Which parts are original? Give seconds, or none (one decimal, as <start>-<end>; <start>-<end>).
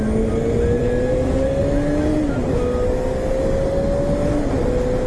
0.0-5.1